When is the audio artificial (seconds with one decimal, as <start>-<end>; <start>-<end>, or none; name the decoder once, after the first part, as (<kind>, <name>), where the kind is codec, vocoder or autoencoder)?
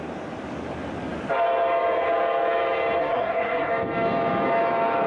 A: 3.0-3.7 (codec, SNAC)